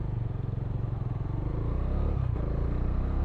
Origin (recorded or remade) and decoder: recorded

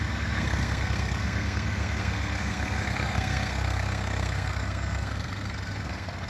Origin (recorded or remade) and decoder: remade, codec, SNAC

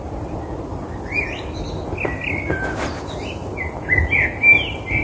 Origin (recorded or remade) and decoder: recorded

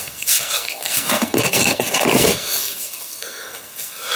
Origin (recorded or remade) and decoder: remade, codec, SNAC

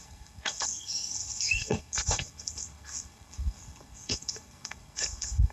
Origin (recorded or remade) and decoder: remade, codec, SNAC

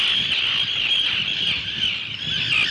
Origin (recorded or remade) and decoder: recorded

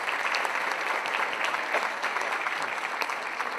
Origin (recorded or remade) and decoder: recorded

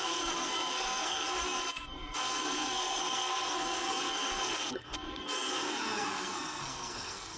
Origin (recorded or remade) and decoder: remade, codec, SNAC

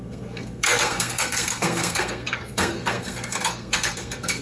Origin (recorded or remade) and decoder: remade, codec, SNAC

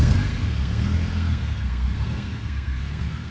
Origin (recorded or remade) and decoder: remade, codec, SNAC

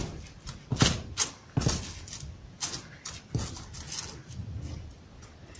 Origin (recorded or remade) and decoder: recorded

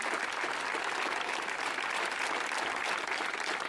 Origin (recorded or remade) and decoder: recorded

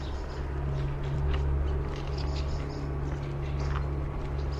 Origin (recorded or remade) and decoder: recorded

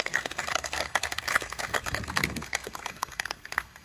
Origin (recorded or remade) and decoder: remade, codec, SNAC